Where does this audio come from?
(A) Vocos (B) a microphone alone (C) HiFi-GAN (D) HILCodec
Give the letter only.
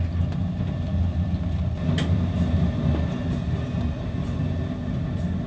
B